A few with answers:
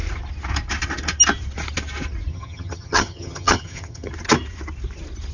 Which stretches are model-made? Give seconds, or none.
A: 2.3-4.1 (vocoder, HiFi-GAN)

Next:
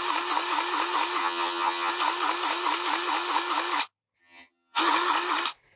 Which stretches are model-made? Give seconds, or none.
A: 1.2-1.9 (vocoder, HiFi-GAN); 4.2-4.8

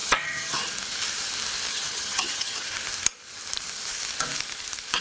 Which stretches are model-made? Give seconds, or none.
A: 0.0-0.7 (vocoder, HiFi-GAN); 1.7-2.7

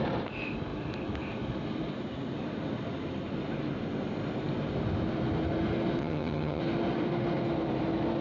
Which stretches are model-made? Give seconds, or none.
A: 6.0-6.6 (vocoder, HiFi-GAN)

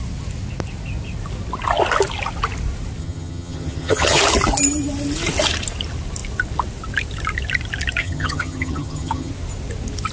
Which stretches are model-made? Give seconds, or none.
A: 3.0-4.2 (vocoder, HiFi-GAN); 8.0-9.3